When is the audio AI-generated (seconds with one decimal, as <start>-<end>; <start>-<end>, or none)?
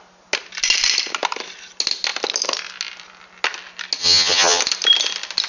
4.0-4.6